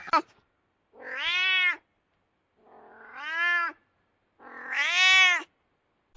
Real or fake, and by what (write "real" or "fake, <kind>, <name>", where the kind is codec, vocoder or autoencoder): real